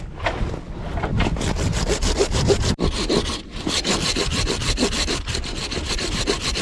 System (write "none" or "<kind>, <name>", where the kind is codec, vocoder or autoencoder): vocoder, BigVGAN v2